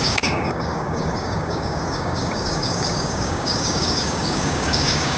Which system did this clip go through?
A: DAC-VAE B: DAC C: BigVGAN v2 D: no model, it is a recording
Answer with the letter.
B